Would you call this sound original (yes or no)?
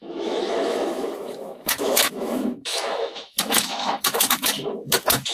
no